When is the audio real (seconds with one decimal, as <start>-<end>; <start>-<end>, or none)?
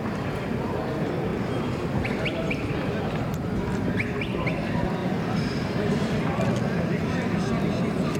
0.0-5.0; 6.2-8.2